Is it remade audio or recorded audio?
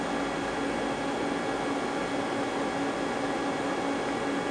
recorded